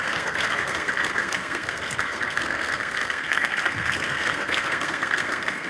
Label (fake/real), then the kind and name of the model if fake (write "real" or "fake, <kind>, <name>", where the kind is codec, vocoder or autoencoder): fake, codec, SNAC